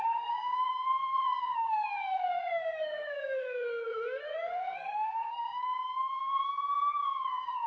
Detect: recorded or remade remade